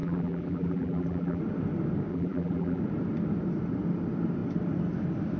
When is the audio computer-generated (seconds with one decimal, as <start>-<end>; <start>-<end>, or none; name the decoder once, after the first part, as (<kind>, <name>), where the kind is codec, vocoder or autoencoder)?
0.0-1.4 (vocoder, BigVGAN v2); 2.1-2.8